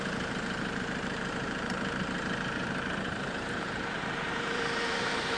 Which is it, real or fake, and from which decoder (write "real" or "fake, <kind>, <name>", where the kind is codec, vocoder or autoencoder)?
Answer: fake, vocoder, BigVGAN v2